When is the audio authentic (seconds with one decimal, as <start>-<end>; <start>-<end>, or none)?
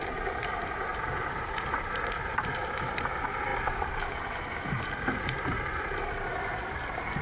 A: none